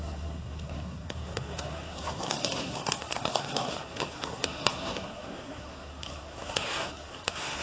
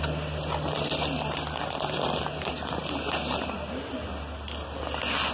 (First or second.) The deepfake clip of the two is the first